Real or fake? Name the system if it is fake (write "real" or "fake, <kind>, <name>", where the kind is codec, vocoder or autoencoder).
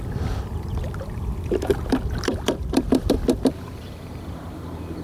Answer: fake, vocoder, BigVGAN v2